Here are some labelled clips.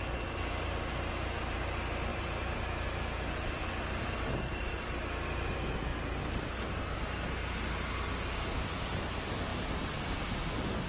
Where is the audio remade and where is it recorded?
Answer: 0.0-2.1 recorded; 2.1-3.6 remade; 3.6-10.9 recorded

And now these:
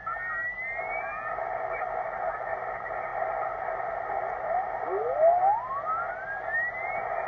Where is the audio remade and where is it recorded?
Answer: 0.0-7.3 recorded

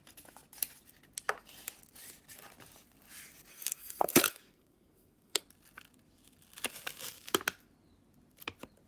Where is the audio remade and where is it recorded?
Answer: 0.0-3.5 recorded; 3.5-5.4 remade; 5.4-8.9 recorded

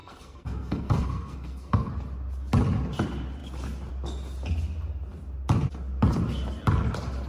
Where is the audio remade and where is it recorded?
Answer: 0.0-1.9 remade; 1.9-7.3 recorded